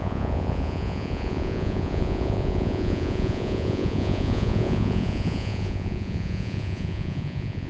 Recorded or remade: remade